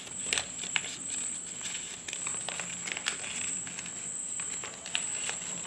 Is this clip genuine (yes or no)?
yes